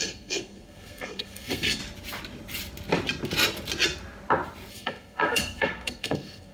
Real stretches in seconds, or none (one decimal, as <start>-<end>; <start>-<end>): 1.8-4.7